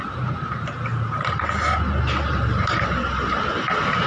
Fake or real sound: real